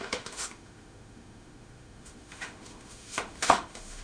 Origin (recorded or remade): remade